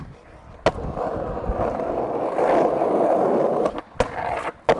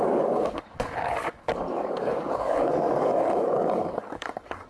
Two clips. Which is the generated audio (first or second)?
second